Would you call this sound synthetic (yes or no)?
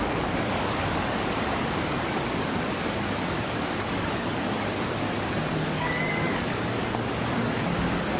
yes